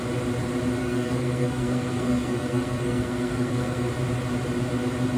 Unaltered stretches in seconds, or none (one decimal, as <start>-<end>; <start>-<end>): 0.0-0.8; 3.9-5.2